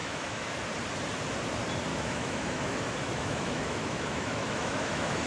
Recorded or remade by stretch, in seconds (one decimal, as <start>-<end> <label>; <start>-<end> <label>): 0.0-0.6 remade; 0.6-1.9 recorded; 1.9-5.3 remade